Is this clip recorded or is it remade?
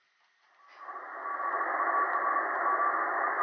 recorded